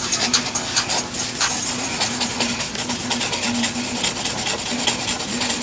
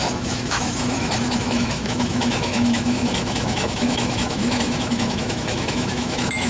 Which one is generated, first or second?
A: second